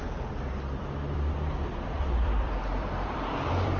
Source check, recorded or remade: remade